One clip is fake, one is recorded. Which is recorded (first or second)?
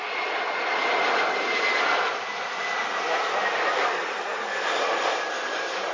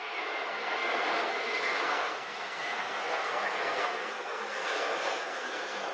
first